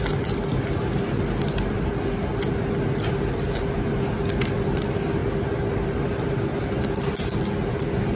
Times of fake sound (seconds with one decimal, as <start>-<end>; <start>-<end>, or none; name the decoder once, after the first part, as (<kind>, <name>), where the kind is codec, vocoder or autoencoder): none